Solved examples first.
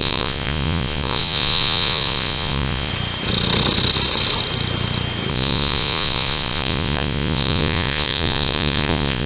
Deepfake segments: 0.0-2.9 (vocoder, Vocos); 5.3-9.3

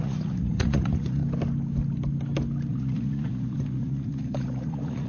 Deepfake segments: 0.0-1.2 (vocoder, Vocos); 2.7-5.1

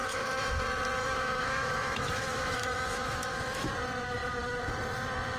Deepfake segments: 0.0-0.6 (autoencoder, DAC-VAE); 1.0-3.7

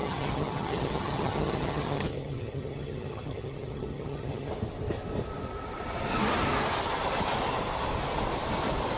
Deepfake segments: 0.0-4.5 (vocoder, HiFi-GAN)

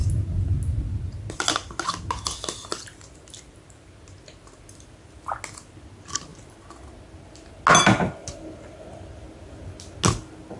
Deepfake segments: none

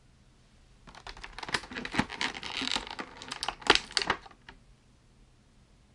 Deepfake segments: 2.1-2.7 (vocoder, BigVGAN v2)

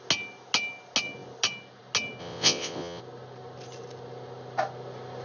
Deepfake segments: 2.2-3.0 (vocoder, WaveNeXt)